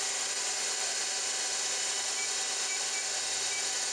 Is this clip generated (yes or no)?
no